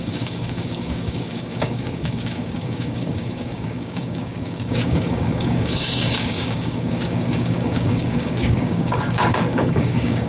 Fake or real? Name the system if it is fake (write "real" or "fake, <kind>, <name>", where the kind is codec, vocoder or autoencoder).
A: fake, codec, DAC